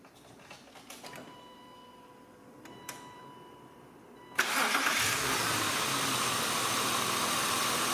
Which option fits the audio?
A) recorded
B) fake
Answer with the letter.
B